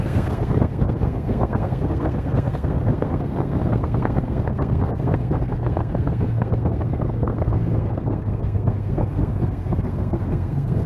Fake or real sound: fake